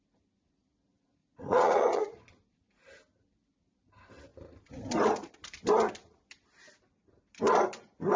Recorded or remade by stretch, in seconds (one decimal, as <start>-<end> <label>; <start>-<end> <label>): 0.0-1.2 recorded; 1.2-2.2 remade; 2.2-8.2 recorded